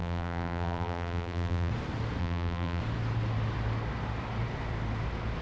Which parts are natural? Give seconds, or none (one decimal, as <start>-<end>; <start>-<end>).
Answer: 1.7-2.2; 2.8-5.4